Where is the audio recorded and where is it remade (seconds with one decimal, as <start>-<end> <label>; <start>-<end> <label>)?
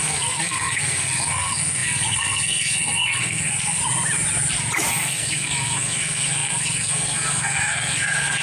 0.0-3.8 remade; 3.8-4.9 recorded; 4.9-8.4 remade